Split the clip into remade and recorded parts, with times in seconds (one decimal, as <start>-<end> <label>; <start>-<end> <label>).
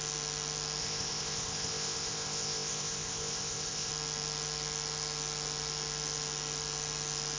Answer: 0.0-0.8 recorded; 0.8-3.9 remade; 3.9-7.4 recorded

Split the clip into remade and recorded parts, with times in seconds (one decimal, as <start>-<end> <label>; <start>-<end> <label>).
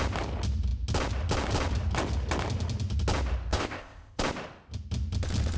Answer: 0.0-3.5 recorded; 3.5-4.2 remade; 4.2-5.6 recorded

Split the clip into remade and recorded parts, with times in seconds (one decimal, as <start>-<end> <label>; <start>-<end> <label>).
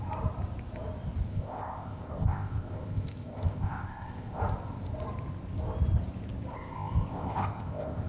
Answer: 0.0-1.3 recorded; 1.3-4.4 remade; 4.4-6.5 recorded; 6.5-8.1 remade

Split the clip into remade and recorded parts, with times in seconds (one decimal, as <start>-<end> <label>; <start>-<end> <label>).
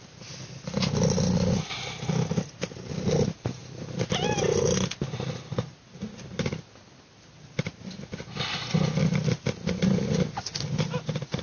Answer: 0.0-11.4 recorded